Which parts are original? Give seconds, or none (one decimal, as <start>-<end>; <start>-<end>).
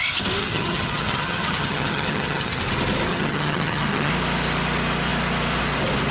0.0-0.4; 2.6-3.1; 4.1-6.1